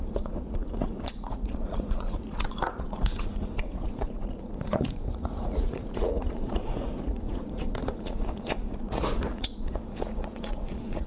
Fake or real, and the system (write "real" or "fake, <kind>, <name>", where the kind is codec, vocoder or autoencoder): fake, vocoder, Vocos